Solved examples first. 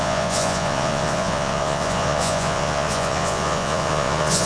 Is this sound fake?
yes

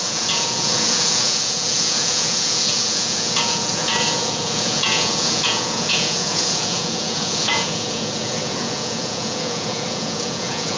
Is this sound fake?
yes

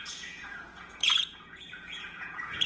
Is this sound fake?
yes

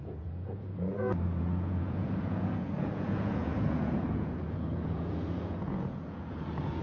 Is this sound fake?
yes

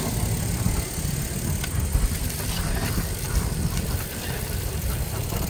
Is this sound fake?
no